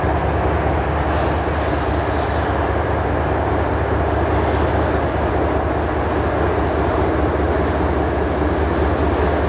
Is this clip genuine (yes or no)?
yes